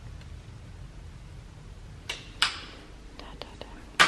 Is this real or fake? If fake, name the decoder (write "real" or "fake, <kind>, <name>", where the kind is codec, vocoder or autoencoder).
real